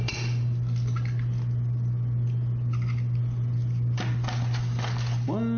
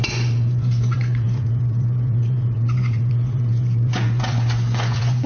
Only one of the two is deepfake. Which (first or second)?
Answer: second